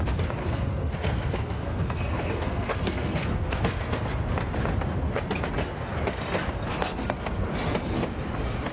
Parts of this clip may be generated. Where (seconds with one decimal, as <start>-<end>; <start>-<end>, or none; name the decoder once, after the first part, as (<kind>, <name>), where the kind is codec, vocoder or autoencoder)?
0.4-4.0 (codec, SNAC); 6.7-7.5